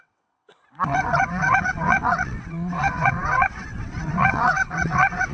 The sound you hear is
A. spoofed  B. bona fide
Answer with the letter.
A